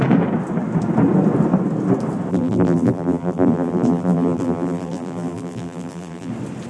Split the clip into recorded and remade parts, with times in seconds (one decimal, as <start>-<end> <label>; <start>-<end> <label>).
0.0-2.3 recorded; 2.3-6.3 remade; 6.3-6.7 recorded